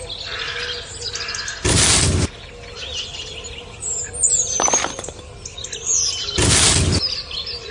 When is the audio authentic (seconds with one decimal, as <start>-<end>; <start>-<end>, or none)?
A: 0.0-7.7